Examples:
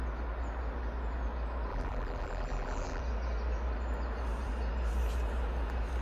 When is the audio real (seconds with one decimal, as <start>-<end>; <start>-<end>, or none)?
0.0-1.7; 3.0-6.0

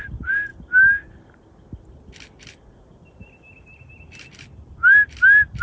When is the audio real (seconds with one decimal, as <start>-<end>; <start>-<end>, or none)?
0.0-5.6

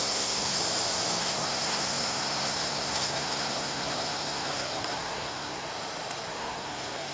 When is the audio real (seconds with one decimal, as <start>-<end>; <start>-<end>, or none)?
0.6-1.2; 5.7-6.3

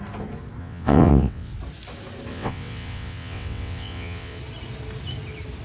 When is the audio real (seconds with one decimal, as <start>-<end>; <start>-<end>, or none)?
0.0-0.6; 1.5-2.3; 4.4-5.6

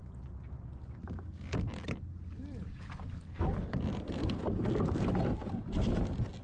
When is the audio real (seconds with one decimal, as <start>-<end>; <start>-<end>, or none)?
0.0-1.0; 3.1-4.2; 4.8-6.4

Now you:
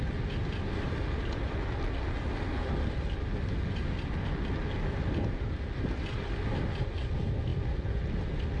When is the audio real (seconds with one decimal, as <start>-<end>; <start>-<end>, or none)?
0.0-8.6

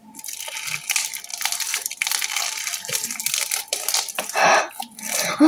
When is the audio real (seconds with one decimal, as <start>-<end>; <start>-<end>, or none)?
0.0-1.3; 4.6-5.5